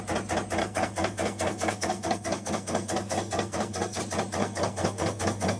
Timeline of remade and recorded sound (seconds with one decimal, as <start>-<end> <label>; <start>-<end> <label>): 0.0-0.6 recorded; 0.6-4.0 remade; 4.0-4.4 recorded; 4.4-5.6 remade